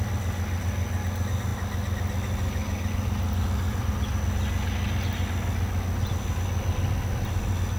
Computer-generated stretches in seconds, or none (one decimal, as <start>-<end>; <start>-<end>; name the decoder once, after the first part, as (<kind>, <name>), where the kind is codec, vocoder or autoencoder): none